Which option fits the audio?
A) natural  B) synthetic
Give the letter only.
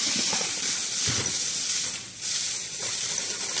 A